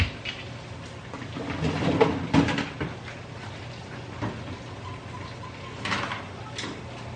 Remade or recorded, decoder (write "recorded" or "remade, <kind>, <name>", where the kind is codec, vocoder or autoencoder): recorded